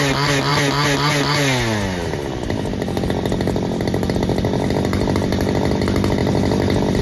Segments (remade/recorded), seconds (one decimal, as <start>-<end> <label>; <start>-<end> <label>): 0.0-7.0 recorded